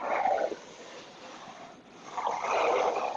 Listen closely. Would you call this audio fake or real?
real